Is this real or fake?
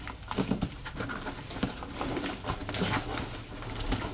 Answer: real